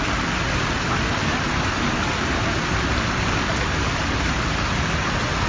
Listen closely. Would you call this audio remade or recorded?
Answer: recorded